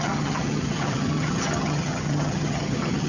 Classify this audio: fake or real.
fake